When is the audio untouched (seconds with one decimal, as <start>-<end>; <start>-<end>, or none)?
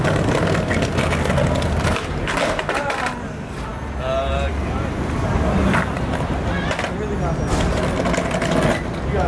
0.0-9.3